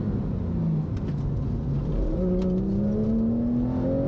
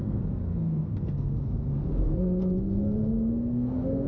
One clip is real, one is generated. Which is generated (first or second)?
second